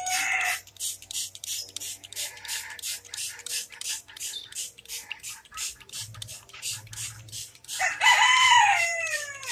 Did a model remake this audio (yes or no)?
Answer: yes